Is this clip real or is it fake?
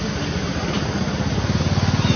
real